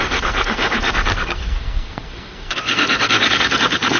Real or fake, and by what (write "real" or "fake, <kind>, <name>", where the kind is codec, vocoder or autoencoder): fake, codec, SNAC